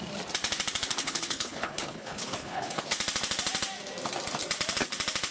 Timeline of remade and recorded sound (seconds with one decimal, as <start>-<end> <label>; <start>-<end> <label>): 0.0-1.0 recorded; 1.0-2.8 remade; 2.8-5.3 recorded